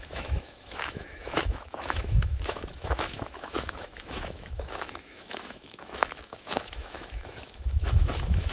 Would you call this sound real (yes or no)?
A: no